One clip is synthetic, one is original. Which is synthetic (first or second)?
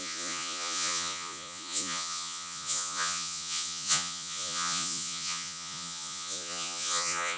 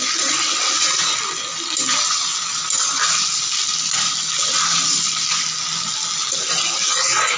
first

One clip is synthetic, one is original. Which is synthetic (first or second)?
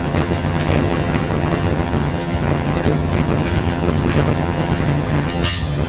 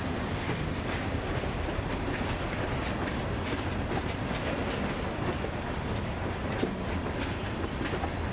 first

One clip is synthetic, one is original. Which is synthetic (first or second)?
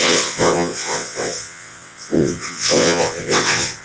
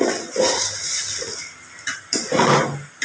first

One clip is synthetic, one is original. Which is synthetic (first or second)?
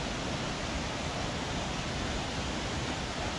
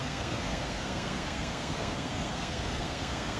second